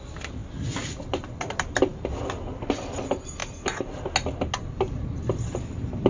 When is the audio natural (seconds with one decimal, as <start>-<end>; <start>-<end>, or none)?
0.0-0.4; 1.5-6.1